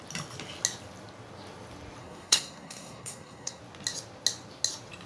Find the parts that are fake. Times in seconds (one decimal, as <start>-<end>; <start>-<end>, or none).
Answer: 2.0-3.6